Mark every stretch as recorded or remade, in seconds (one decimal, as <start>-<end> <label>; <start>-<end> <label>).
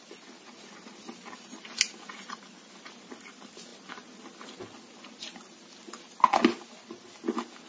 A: 0.0-7.7 recorded